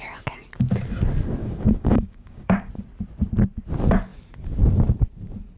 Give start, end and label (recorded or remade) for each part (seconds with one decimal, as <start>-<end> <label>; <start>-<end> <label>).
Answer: 0.0-1.4 recorded; 1.4-2.7 remade; 2.7-5.6 recorded